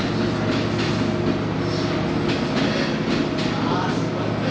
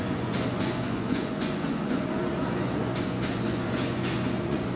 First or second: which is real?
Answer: first